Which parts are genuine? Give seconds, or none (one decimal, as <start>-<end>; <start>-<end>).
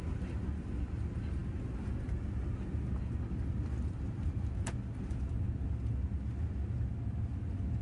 0.0-7.8